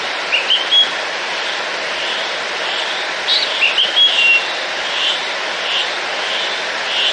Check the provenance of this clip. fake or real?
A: real